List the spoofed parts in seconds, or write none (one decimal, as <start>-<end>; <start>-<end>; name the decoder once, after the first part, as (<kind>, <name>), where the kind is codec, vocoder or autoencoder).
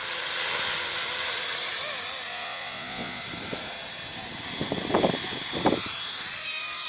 2.3-3.2 (vocoder, Vocos)